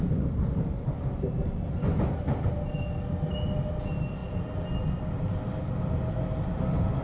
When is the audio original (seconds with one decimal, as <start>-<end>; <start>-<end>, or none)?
0.0-7.0